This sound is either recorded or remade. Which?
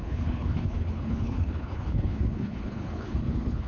remade